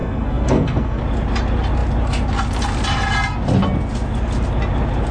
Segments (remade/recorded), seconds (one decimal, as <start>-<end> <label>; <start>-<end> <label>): 0.0-1.0 remade; 1.0-5.1 recorded